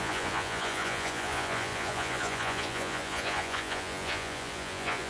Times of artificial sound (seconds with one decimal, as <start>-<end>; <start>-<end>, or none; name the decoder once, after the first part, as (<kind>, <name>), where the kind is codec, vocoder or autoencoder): 0.0-5.1 (vocoder, Vocos)

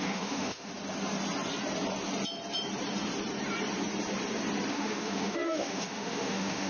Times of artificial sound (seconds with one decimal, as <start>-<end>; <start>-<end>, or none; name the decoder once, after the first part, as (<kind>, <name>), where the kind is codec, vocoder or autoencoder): 0.0-0.7 (autoencoder, DAC-VAE); 4.7-6.7

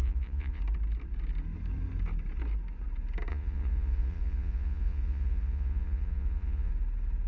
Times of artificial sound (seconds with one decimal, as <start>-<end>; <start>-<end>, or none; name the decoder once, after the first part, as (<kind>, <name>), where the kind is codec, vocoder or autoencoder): 0.0-0.6 (vocoder, Vocos); 3.3-6.7

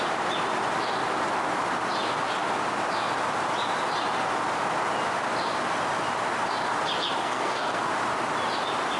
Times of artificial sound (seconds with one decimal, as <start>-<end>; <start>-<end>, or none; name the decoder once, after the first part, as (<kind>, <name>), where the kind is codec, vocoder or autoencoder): 7.2-7.9 (codec, SNAC)

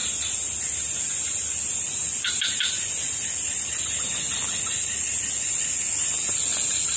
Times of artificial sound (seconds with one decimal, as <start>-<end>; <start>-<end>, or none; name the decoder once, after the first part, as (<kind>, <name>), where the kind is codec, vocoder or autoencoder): none